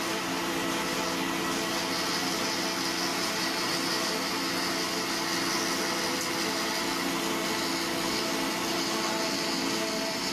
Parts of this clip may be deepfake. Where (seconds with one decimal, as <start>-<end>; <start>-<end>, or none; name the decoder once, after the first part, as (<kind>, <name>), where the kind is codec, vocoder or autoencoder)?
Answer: 3.1-3.7 (vocoder, BigVGAN v2)